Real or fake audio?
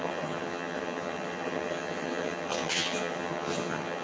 fake